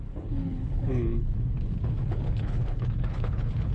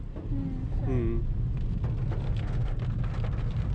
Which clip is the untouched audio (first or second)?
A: second